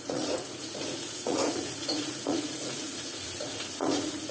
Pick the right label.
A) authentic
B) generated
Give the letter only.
B